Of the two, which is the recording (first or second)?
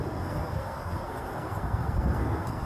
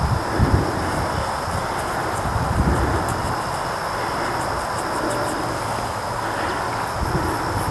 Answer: second